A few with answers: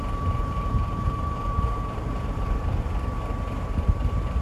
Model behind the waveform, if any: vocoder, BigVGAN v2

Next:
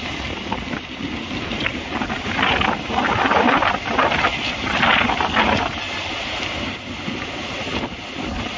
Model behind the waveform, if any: none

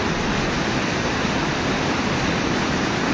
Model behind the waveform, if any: none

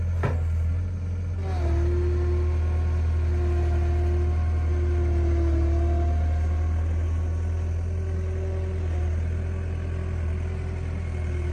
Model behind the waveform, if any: none